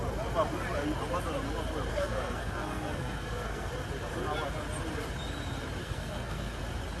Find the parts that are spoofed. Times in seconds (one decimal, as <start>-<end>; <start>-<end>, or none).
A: 1.9-3.7; 5.8-6.6

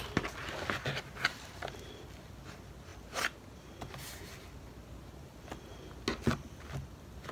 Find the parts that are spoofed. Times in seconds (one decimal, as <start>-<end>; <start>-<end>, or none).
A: none

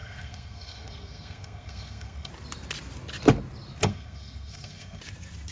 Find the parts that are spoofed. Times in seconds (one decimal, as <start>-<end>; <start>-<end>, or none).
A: 0.0-2.3; 3.8-5.0

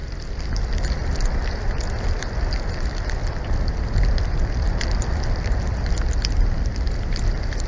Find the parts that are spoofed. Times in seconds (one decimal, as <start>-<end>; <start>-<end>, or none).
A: none

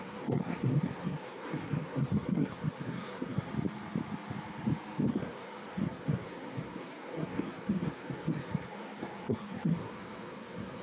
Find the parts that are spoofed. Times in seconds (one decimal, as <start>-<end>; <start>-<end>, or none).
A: 0.0-3.5; 5.1-10.8

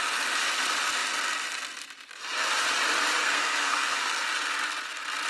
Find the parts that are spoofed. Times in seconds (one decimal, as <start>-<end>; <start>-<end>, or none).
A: 3.2-4.2

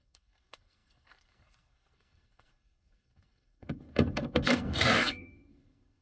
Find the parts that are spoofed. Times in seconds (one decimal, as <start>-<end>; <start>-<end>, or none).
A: 0.0-6.0